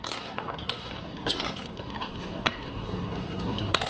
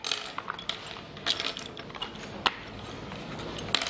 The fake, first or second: first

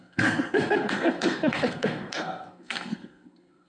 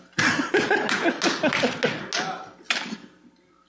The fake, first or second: first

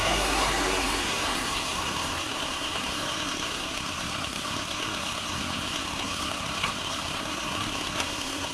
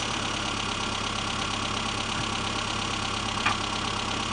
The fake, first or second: first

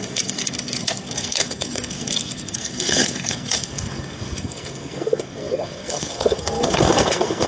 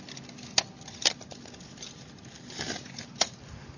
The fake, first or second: first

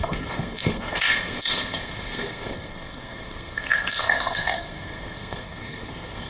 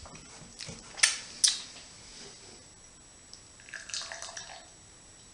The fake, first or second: first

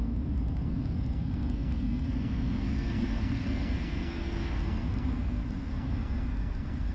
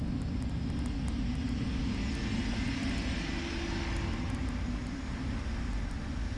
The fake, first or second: first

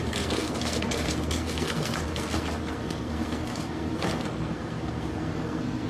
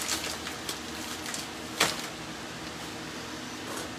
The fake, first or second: first